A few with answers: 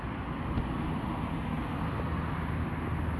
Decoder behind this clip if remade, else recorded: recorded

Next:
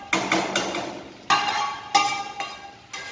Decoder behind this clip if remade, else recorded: recorded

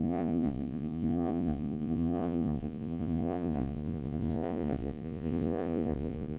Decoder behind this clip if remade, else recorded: remade, vocoder, Vocos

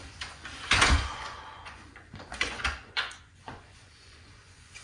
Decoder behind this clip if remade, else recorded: remade, vocoder, Vocos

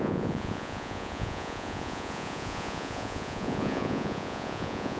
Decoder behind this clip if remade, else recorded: remade, vocoder, Vocos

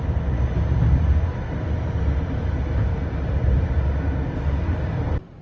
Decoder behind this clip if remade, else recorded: recorded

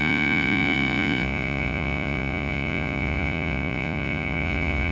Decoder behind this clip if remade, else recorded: remade, vocoder, Vocos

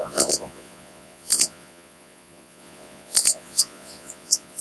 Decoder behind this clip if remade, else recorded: remade, vocoder, Vocos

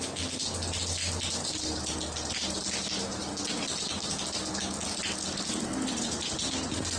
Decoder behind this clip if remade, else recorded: recorded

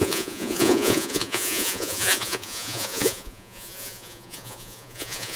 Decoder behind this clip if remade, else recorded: remade, vocoder, Vocos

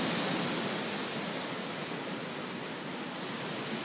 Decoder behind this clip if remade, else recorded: recorded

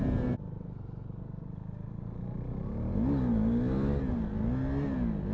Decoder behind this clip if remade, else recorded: recorded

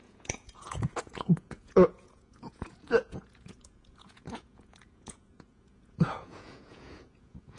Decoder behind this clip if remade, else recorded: remade, vocoder, Vocos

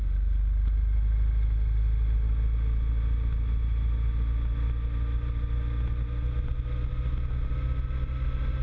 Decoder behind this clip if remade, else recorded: recorded